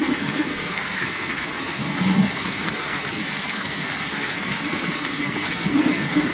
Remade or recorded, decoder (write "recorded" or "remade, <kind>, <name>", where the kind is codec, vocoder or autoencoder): remade, codec, SNAC